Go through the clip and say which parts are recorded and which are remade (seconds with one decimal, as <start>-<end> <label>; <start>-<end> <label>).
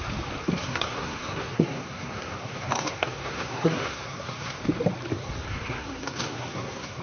0.0-0.4 recorded; 0.4-4.6 remade; 4.6-5.1 recorded; 5.1-7.0 remade